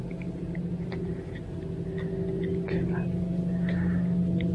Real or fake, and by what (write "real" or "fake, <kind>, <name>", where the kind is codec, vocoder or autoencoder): real